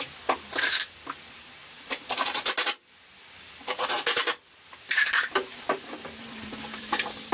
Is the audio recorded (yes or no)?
no